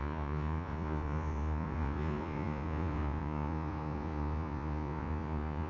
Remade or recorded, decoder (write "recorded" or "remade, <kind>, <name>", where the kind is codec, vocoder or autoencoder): remade, vocoder, Vocos